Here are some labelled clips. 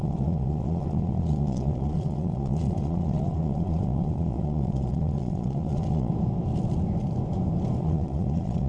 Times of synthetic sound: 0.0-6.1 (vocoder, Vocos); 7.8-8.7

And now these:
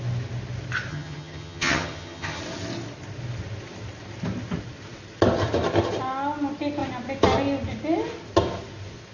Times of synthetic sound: 0.9-2.4 (vocoder, HiFi-GAN)

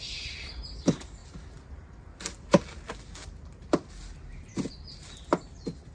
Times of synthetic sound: none

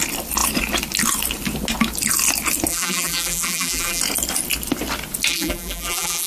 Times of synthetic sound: 2.7-4.0 (vocoder, BigVGAN v2); 5.3-6.3

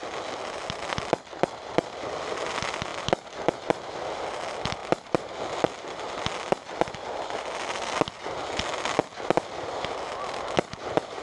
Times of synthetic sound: none

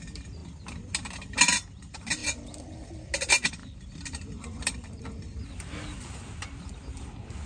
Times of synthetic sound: 3.6-5.4 (vocoder, BigVGAN v2)